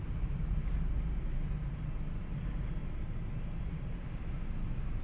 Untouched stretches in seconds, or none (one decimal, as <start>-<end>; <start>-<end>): 0.0-5.0